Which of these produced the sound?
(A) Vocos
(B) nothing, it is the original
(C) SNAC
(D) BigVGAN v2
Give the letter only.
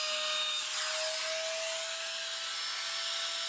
B